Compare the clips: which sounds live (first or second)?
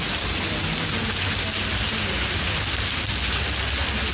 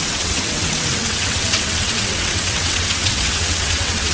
first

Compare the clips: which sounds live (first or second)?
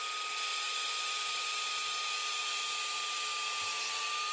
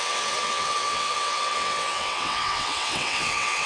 first